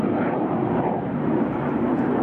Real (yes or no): no